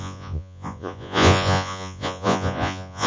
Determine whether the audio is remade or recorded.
remade